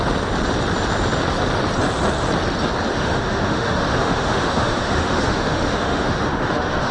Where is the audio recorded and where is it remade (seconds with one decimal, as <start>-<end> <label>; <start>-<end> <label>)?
0.0-2.9 recorded; 2.9-6.9 remade